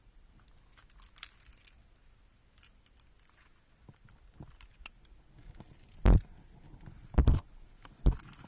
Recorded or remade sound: recorded